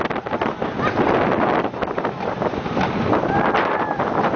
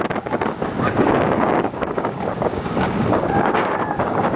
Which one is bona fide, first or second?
first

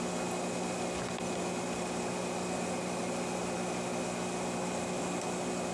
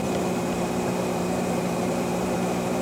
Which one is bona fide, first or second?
first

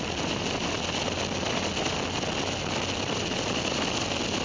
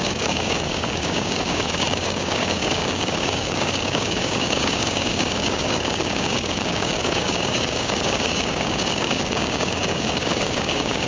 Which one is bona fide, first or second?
first